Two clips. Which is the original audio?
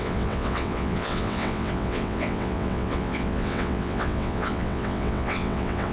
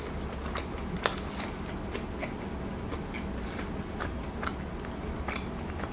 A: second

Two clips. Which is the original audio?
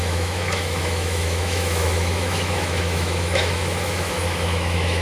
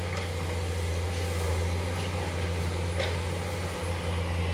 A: second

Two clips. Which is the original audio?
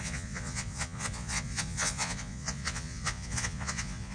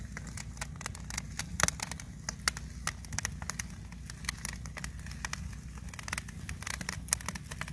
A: second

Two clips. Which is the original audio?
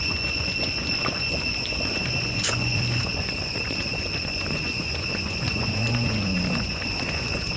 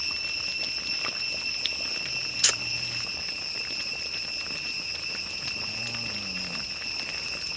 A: second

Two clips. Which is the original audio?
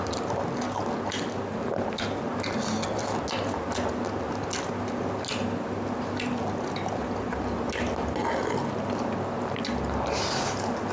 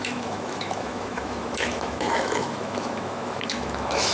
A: first